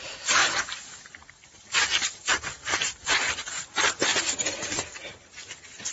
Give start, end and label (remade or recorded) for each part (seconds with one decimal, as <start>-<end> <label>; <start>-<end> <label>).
0.0-5.9 remade